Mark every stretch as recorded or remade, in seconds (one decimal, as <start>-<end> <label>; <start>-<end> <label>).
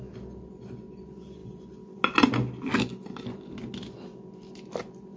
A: 0.0-5.2 recorded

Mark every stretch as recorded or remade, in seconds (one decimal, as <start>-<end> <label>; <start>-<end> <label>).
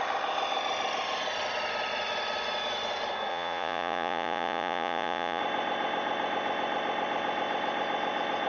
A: 0.0-3.3 recorded; 3.3-5.4 remade; 5.4-8.5 recorded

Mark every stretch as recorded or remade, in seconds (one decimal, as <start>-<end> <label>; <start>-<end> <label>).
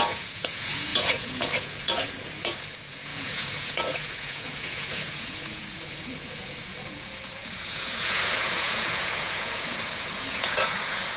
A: 0.0-11.2 remade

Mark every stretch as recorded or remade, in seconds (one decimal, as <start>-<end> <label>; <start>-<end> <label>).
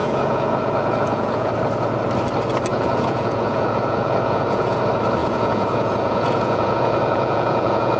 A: 0.0-1.5 remade; 1.5-2.7 recorded; 2.7-4.8 remade; 4.8-5.2 recorded; 5.2-8.0 remade